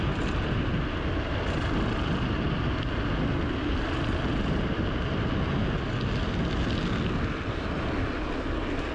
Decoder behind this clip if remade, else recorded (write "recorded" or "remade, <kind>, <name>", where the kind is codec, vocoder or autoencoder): recorded